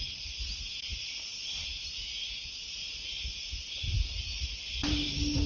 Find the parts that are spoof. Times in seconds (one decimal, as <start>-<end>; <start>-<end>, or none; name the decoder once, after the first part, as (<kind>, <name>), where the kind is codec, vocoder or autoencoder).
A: 0.0-5.5 (vocoder, BigVGAN v2)